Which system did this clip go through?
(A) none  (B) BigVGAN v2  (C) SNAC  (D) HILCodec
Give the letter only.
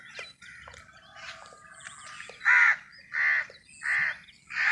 A